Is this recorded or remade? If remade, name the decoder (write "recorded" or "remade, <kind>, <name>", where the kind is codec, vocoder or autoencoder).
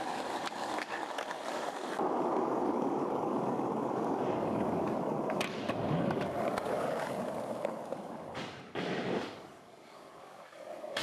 remade, codec, DAC